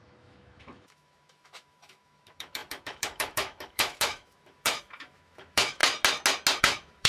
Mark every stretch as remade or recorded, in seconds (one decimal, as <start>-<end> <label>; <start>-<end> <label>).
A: 0.0-5.8 remade; 5.8-6.6 recorded; 6.6-7.1 remade

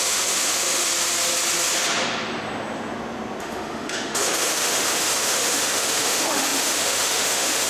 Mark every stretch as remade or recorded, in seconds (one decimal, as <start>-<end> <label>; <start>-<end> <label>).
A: 0.0-0.9 remade; 0.9-3.4 recorded; 3.4-7.7 remade

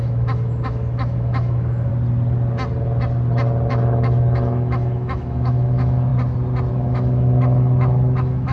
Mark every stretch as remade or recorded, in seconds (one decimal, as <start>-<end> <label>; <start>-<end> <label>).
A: 0.0-1.9 remade; 1.9-3.7 recorded; 3.7-6.1 remade; 6.1-6.7 recorded; 6.7-8.5 remade

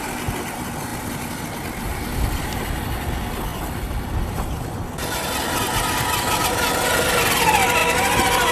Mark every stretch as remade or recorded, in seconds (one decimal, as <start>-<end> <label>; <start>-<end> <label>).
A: 0.0-8.5 recorded

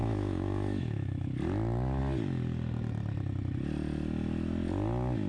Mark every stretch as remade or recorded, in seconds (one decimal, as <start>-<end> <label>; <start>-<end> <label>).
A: 0.0-1.3 remade; 1.3-5.3 recorded

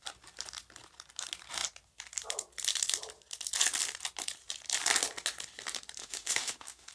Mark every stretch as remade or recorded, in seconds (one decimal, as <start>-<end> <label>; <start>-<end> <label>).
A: 0.0-6.0 recorded; 6.0-6.9 remade

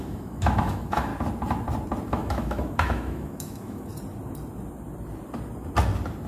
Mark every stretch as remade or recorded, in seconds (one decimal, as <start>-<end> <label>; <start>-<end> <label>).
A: 0.0-1.1 remade; 1.1-2.1 recorded; 2.1-3.9 remade; 3.9-6.3 recorded

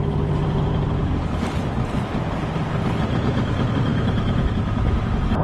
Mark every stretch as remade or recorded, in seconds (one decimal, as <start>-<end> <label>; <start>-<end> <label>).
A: 0.0-3.9 recorded; 3.9-4.5 remade; 4.5-5.4 recorded